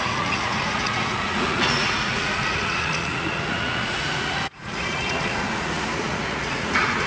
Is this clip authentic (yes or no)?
no